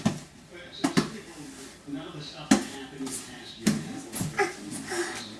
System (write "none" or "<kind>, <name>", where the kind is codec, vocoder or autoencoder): none